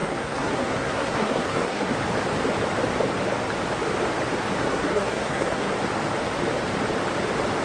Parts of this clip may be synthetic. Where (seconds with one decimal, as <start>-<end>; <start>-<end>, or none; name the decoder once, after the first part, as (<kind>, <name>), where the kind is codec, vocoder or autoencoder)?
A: 0.0-1.9 (codec, SNAC); 4.6-5.7